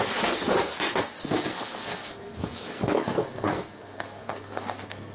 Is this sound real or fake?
fake